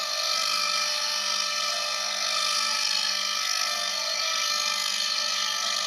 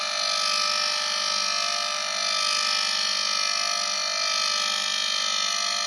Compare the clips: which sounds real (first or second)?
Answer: second